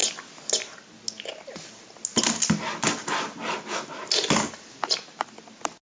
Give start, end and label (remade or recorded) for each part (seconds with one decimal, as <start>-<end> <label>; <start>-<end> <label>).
0.0-5.9 recorded